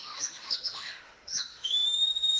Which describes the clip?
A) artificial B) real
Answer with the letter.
A